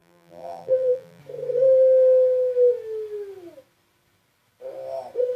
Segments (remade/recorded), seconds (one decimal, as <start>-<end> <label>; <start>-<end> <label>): 0.0-1.2 remade; 1.2-5.4 recorded